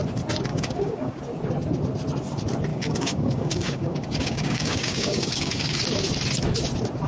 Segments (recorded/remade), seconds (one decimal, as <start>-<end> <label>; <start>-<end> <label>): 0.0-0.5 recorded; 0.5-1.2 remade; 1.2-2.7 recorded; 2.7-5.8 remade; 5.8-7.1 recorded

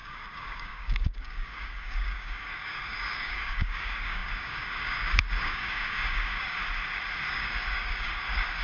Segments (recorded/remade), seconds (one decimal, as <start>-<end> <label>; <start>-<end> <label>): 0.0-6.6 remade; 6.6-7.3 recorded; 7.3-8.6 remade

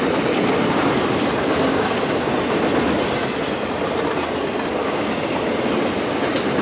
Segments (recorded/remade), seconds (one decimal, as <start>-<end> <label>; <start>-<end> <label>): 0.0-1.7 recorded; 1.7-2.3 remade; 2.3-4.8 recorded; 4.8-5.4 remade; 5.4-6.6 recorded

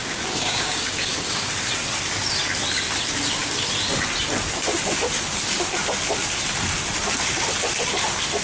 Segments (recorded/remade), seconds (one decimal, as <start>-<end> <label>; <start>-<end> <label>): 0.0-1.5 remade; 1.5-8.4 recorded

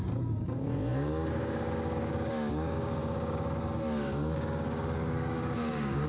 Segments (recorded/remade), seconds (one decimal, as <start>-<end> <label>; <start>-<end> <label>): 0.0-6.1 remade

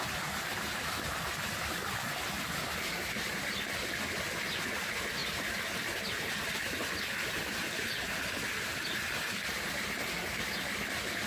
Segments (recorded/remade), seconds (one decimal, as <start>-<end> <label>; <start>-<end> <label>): 0.0-11.3 recorded